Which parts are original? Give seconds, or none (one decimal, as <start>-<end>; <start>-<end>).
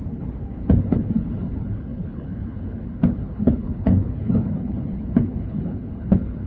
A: none